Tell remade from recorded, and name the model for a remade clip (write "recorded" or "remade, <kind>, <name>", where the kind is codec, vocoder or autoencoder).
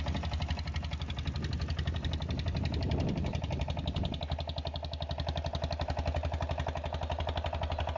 recorded